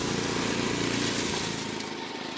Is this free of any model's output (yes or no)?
yes